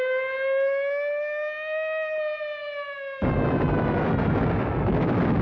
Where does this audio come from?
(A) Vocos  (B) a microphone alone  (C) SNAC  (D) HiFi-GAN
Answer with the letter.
B